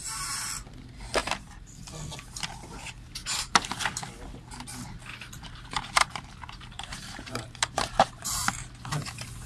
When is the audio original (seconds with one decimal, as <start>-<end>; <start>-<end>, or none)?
0.0-1.2; 1.8-3.2; 3.8-6.0; 8.3-9.5